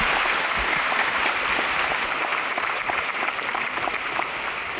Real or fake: fake